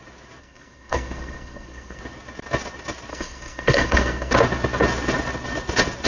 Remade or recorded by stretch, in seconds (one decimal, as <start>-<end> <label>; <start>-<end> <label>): 0.0-0.4 recorded; 0.4-2.0 remade; 2.0-3.1 recorded; 3.1-4.3 remade; 4.3-6.1 recorded